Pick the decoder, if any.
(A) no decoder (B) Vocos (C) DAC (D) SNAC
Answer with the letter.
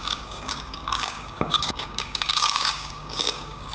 C